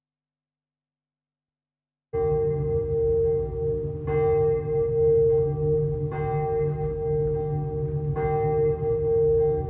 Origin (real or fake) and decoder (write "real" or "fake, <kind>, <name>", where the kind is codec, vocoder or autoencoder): real